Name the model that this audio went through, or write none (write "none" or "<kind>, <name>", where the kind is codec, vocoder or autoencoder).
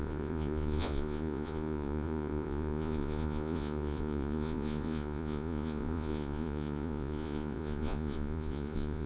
vocoder, Vocos